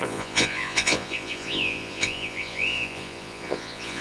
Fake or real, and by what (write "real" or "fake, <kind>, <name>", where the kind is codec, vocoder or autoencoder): fake, vocoder, Vocos